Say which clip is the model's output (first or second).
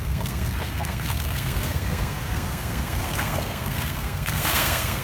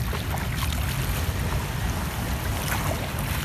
first